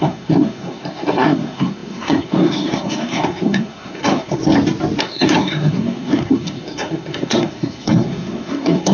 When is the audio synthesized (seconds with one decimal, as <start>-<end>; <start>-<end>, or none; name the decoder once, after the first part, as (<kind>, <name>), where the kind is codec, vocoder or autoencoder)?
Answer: 0.0-4.4 (codec, SNAC); 5.0-8.9